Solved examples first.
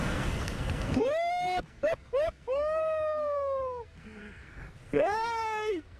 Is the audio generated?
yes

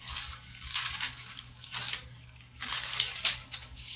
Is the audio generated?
yes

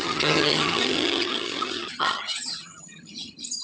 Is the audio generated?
yes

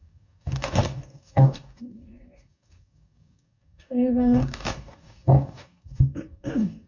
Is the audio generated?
yes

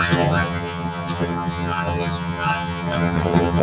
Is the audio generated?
yes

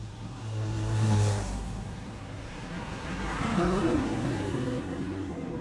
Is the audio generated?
yes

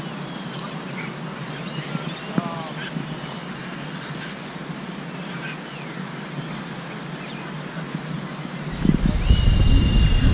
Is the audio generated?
no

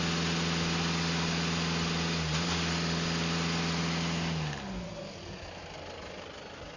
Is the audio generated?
no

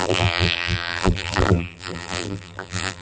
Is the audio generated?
yes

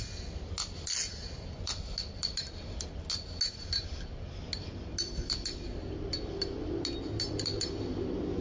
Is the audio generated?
no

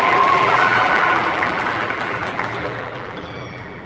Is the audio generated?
yes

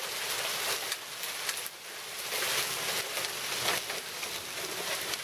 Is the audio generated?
no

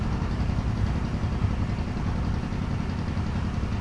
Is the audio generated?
no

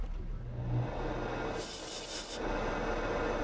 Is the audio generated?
no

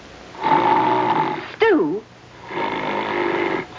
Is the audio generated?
no